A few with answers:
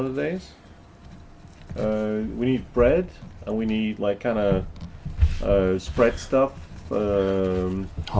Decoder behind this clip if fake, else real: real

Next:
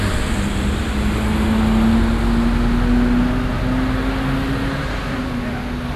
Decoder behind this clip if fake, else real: real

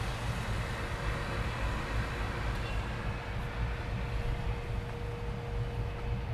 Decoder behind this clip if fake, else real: real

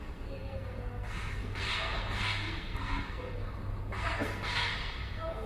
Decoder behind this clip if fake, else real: fake, codec, SNAC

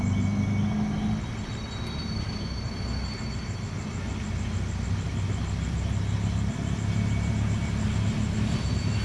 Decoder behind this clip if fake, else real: real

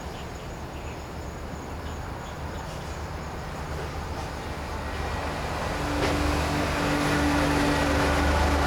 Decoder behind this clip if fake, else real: real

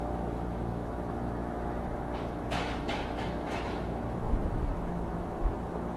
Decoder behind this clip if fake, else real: fake, autoencoder, DAC-VAE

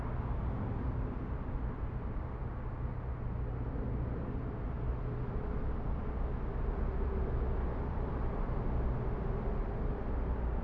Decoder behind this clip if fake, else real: real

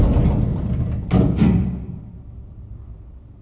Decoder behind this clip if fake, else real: real